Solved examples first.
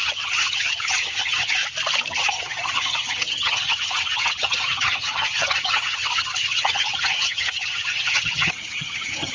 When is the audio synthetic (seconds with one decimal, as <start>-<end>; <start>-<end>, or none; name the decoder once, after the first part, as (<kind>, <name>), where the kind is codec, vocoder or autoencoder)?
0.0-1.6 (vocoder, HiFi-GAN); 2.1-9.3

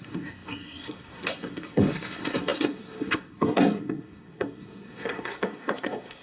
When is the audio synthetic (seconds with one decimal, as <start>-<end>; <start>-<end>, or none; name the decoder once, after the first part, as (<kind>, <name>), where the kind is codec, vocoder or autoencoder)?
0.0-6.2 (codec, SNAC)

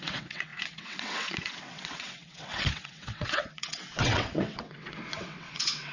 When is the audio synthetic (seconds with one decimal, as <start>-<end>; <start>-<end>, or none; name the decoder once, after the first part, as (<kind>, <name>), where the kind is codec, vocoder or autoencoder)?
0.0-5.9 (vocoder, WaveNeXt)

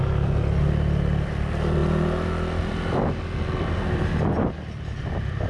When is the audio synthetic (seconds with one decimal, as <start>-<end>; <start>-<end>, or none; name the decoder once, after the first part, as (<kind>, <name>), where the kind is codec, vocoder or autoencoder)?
none

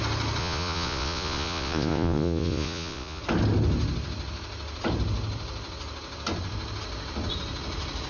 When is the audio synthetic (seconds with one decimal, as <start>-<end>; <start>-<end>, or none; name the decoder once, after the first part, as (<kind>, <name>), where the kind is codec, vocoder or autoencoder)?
0.4-3.2 (vocoder, Vocos)

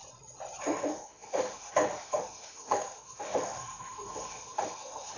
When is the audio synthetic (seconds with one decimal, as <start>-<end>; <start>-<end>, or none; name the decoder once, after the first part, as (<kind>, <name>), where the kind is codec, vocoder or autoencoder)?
0.6-5.2 (autoencoder, DAC-VAE)

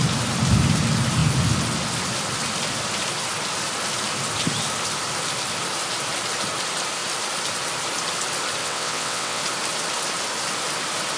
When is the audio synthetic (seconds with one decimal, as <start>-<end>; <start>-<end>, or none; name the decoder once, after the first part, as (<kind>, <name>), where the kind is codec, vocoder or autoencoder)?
8.6-9.4 (vocoder, WaveNeXt)

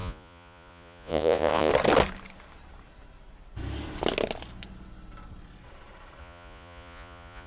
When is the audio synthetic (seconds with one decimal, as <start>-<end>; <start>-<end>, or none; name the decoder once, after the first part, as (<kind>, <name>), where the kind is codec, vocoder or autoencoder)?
0.0-1.7 (vocoder, Vocos); 6.2-7.5